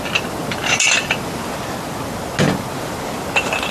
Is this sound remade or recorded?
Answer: recorded